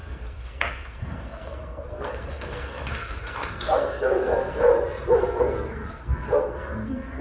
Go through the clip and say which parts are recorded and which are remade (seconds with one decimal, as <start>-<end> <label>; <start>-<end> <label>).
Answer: 0.0-4.7 remade; 4.7-5.2 recorded; 5.2-7.2 remade